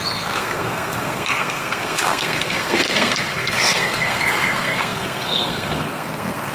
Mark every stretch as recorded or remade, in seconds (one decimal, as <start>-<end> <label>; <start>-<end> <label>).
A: 0.0-6.5 remade